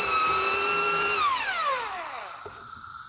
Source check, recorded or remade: remade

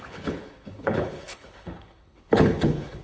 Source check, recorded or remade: remade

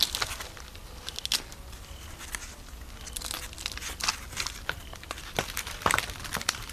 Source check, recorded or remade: recorded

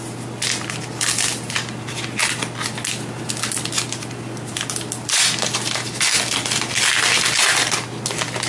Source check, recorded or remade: recorded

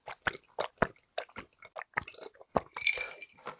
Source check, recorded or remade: recorded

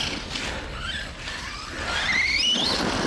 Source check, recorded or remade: recorded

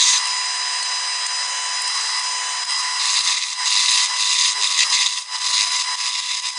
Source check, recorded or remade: recorded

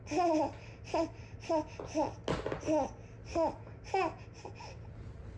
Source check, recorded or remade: recorded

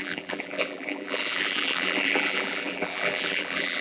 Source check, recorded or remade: remade